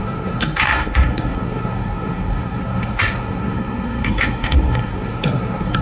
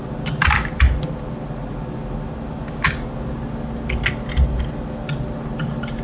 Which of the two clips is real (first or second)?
second